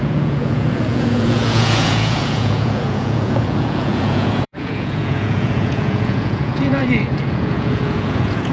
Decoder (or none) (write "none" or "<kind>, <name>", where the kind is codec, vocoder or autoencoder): vocoder, Vocos